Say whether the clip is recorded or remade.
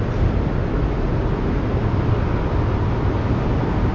recorded